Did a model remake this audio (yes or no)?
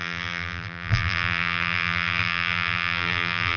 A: yes